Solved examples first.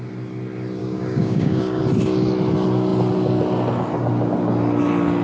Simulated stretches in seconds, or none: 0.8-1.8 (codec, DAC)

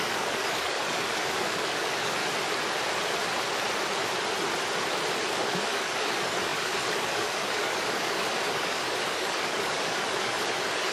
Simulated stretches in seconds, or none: 0.0-2.2 (codec, DAC); 5.1-10.9

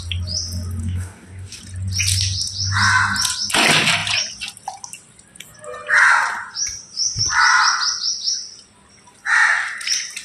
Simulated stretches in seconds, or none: 0.8-1.6 (codec, DAC)

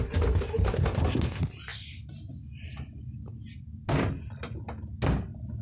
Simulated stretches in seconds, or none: none

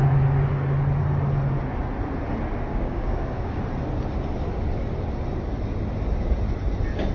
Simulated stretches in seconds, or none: 2.7-3.6 (codec, DAC)

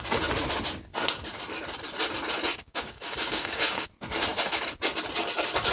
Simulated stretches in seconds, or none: 2.5-3.9 (codec, DAC)